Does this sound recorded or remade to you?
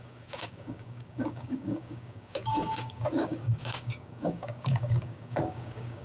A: remade